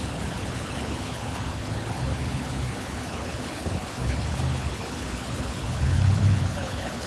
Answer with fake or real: fake